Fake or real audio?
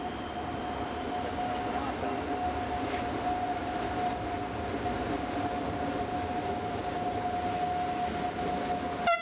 real